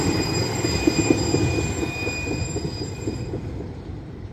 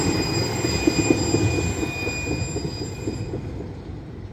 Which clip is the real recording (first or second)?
second